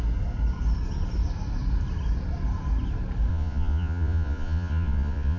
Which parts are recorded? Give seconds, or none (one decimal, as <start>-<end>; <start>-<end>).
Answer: 0.0-3.3